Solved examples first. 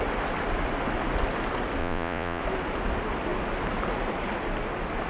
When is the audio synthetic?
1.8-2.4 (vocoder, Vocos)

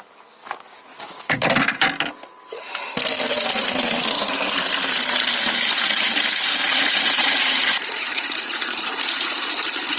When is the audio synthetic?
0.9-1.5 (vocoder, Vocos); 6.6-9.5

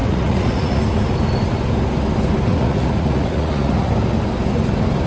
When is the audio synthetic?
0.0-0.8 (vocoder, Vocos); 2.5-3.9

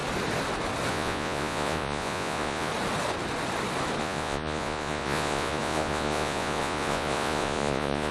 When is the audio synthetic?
0.9-2.7 (vocoder, Vocos); 4.0-8.1

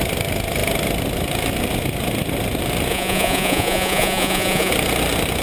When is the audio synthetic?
2.9-4.7 (vocoder, Vocos)

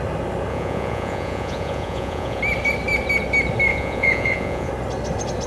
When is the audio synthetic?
0.5-2.4 (vocoder, Vocos); 3.7-4.7